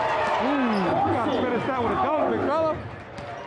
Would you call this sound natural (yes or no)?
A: yes